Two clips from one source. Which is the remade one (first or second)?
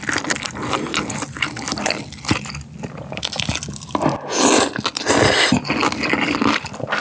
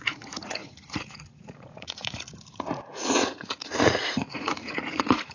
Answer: second